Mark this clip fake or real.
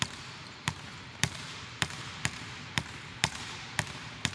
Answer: fake